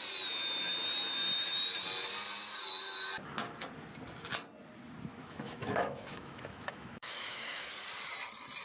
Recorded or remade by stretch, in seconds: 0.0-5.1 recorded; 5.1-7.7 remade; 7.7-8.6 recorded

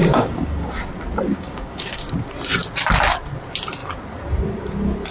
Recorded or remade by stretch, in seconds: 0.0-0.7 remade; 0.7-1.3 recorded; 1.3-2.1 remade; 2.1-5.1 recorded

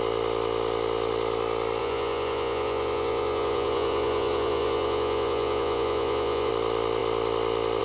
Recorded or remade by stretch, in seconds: 0.0-1.8 recorded; 1.8-6.5 remade; 6.5-7.8 recorded

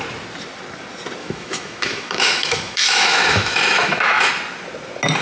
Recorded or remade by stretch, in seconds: 0.0-1.2 recorded; 1.2-4.3 remade; 4.3-5.2 recorded